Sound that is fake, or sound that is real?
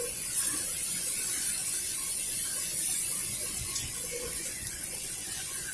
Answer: fake